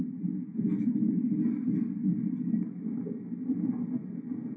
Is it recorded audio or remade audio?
recorded